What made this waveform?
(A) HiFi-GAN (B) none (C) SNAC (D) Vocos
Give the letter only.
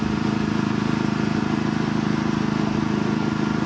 B